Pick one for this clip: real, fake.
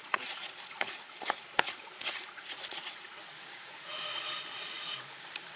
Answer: fake